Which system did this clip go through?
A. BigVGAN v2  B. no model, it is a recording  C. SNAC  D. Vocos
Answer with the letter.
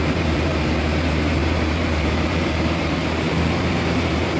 A